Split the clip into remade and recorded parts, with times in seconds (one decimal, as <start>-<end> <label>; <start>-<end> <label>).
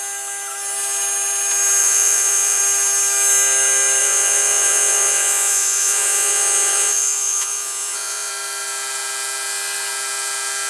0.0-1.8 recorded; 1.8-2.6 remade; 2.6-4.0 recorded; 4.0-8.3 remade; 8.3-10.7 recorded